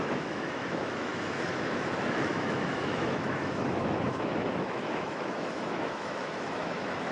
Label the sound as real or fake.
fake